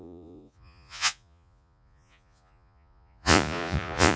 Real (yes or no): no